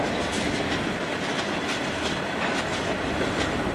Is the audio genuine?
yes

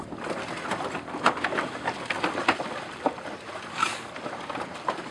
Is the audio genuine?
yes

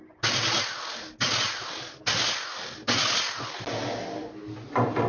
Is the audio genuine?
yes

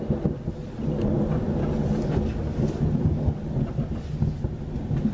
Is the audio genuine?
yes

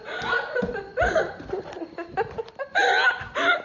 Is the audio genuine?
yes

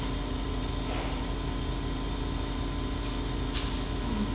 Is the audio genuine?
yes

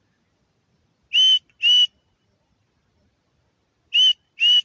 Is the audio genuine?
yes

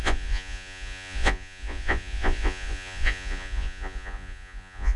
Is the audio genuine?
no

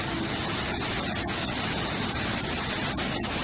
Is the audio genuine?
yes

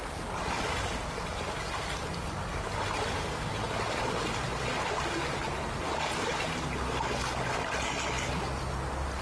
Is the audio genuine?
yes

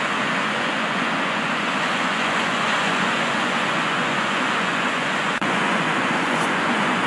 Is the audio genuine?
no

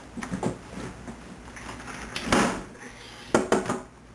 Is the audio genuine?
yes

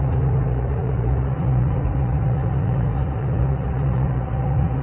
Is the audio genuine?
no